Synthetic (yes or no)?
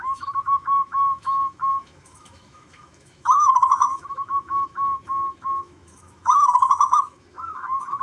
yes